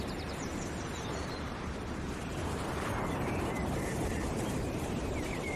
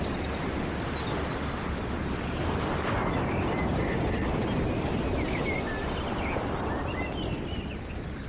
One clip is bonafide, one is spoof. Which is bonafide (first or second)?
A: second